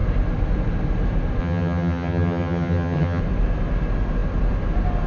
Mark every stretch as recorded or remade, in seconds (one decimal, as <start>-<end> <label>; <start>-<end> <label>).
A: 0.0-1.4 recorded; 1.4-3.2 remade; 3.2-5.1 recorded